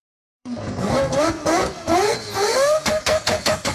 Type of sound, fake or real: fake